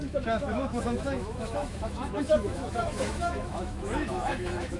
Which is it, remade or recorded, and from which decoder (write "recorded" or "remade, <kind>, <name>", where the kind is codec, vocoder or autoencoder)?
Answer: remade, autoencoder, DAC-VAE